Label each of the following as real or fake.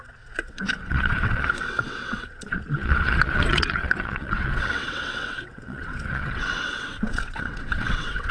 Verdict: fake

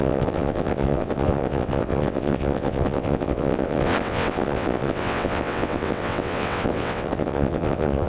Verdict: fake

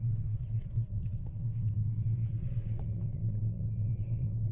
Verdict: fake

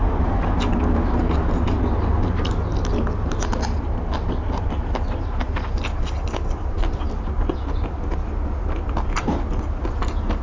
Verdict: real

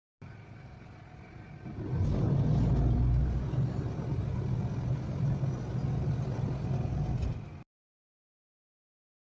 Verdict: real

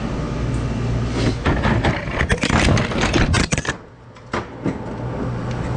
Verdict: real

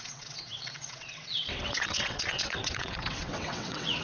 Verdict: fake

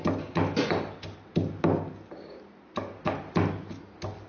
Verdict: real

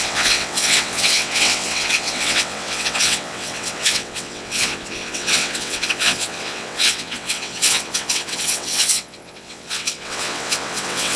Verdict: fake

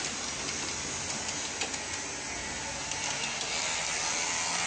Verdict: real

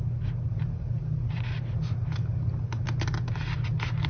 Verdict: real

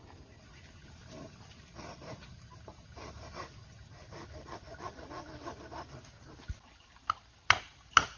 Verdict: real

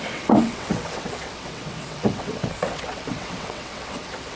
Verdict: fake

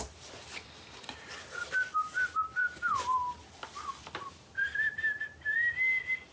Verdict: real